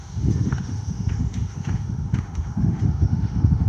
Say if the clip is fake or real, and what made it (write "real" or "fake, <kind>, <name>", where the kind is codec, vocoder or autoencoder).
fake, autoencoder, DAC-VAE